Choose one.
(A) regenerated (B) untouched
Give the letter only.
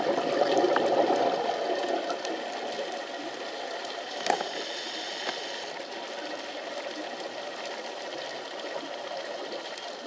B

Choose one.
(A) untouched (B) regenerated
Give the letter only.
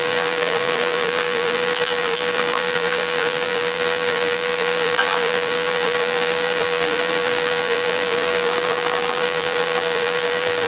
B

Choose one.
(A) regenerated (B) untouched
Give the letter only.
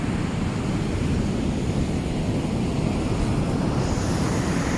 B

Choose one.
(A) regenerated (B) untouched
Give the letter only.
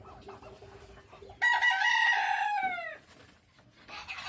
B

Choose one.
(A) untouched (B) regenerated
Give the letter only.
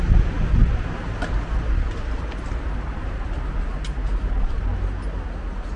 A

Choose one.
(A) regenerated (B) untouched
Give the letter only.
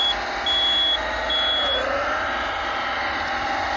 B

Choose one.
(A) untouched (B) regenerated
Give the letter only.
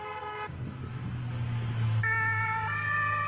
A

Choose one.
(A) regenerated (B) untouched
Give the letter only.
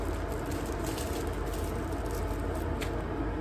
B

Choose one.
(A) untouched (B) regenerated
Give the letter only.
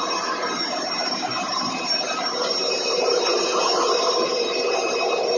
B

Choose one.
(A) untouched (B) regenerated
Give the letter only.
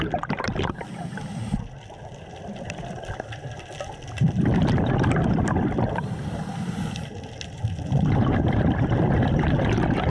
B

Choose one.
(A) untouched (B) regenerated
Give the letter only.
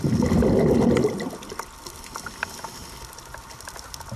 A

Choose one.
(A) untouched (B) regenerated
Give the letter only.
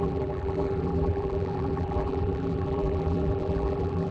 B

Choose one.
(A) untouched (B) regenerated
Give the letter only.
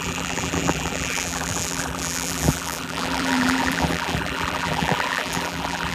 B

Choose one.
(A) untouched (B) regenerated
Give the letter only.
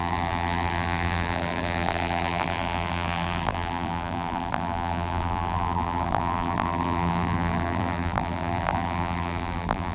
B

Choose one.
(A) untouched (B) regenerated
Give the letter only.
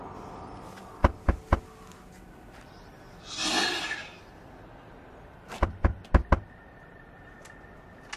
A